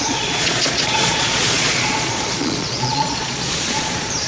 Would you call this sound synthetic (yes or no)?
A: yes